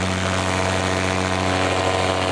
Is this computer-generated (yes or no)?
no